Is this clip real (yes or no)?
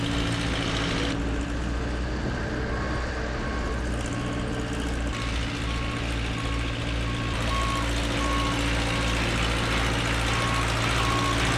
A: yes